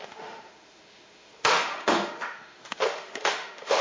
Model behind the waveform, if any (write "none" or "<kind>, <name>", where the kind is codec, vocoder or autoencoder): autoencoder, DAC-VAE